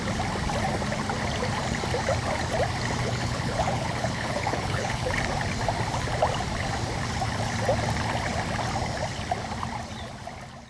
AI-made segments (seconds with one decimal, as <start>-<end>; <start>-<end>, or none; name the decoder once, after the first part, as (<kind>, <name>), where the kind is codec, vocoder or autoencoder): 3.0-5.1 (codec, HILCodec)